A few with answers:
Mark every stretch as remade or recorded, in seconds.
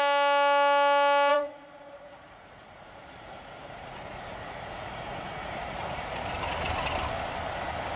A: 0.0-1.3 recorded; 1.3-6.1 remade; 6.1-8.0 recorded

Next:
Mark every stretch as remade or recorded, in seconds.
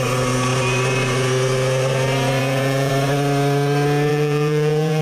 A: 0.0-2.4 recorded; 2.4-2.9 remade; 2.9-4.1 recorded; 4.1-5.0 remade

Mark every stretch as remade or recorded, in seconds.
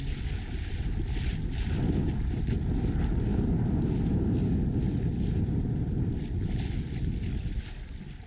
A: 0.0-8.3 recorded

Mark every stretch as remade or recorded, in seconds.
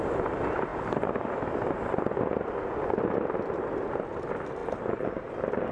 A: 0.0-5.7 recorded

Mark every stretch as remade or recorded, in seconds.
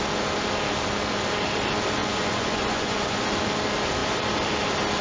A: 0.0-2.0 recorded; 2.0-3.2 remade; 3.2-5.0 recorded